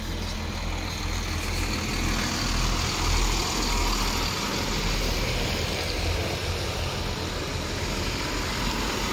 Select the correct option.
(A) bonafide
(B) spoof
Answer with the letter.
A